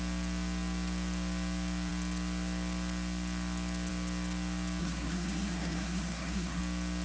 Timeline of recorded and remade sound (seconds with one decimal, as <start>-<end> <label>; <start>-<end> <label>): 0.0-4.8 recorded; 4.8-6.6 remade; 6.6-7.0 recorded